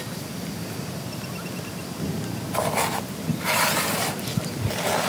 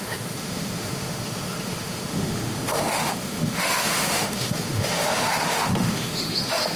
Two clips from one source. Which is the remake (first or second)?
second